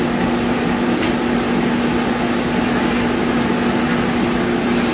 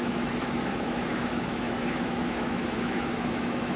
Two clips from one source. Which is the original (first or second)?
first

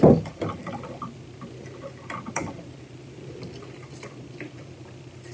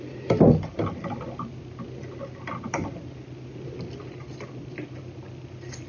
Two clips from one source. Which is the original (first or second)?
second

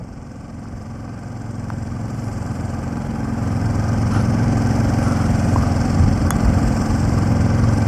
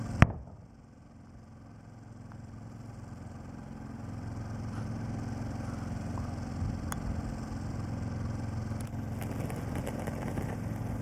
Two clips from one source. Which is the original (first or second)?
second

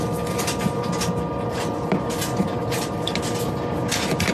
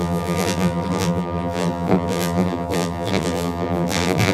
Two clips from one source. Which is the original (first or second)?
first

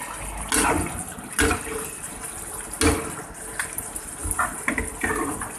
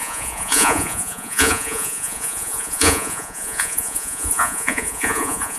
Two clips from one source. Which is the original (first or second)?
first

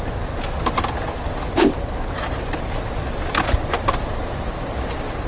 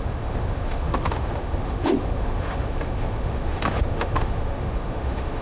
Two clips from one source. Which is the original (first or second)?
first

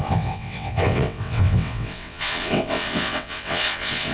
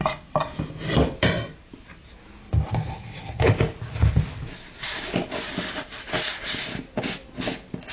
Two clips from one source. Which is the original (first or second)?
second